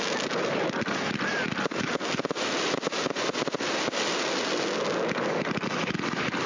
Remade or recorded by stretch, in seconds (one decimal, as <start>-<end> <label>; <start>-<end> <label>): 0.0-6.5 recorded